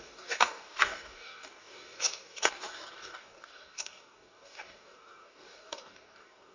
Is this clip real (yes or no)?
no